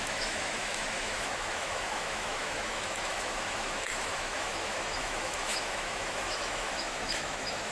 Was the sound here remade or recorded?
remade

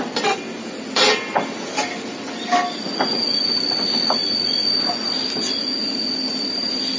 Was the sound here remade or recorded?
recorded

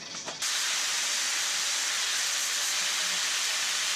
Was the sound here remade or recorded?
recorded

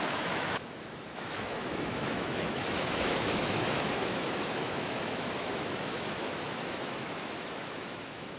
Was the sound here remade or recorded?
remade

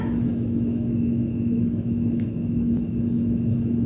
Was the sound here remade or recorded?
remade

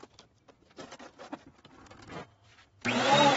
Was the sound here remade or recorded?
recorded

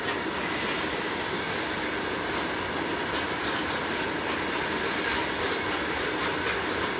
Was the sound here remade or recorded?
recorded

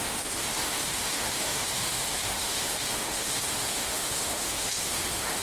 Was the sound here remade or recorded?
remade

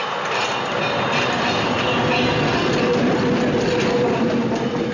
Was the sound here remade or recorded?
recorded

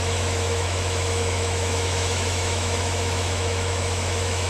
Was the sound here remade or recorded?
remade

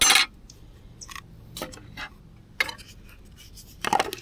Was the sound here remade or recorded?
recorded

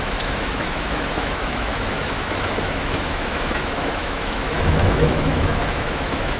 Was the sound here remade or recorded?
remade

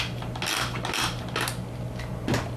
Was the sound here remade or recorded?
recorded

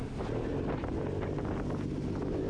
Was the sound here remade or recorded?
recorded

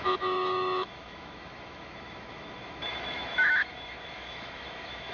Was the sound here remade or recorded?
remade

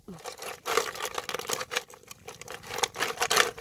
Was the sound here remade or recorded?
recorded